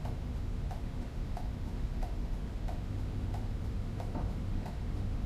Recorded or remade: remade